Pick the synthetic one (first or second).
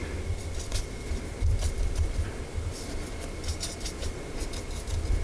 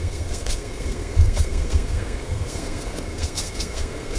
second